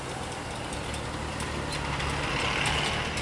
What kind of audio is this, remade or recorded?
recorded